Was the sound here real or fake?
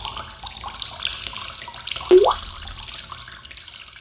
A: real